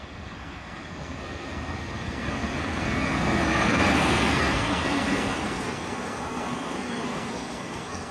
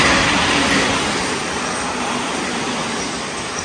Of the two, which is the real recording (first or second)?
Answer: second